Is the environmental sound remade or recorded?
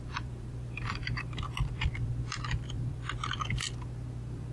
remade